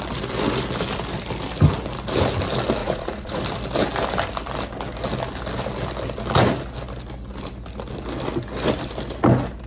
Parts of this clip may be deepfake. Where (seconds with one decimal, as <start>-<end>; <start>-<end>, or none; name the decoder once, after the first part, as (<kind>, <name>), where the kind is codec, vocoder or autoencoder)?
2.8-3.4 (vocoder, Vocos)